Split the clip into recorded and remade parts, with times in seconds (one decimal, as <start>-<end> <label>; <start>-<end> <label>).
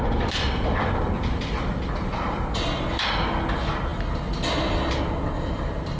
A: 0.0-6.0 recorded